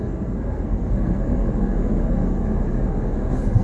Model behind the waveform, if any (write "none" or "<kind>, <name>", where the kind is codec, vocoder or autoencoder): codec, SNAC